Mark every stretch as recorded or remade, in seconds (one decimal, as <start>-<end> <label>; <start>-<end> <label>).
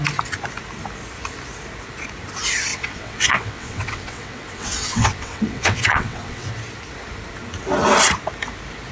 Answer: 0.0-2.7 recorded; 2.7-6.5 remade; 6.5-8.9 recorded